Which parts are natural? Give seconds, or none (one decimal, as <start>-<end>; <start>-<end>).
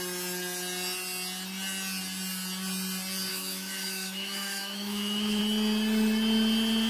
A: 0.0-3.3; 5.4-6.9